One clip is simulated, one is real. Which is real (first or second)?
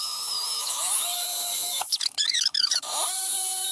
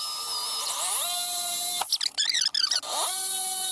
second